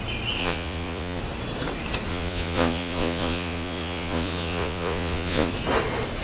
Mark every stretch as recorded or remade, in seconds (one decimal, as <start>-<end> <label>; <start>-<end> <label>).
0.0-0.4 recorded; 0.4-1.2 remade; 1.2-2.1 recorded; 2.1-5.5 remade; 5.5-6.2 recorded